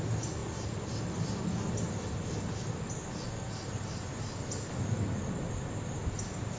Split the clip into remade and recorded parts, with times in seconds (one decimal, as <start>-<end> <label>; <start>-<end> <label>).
0.0-6.6 recorded